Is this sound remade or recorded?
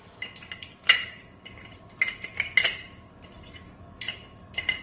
recorded